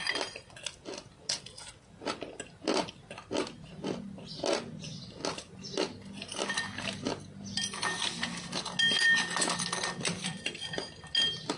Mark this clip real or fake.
real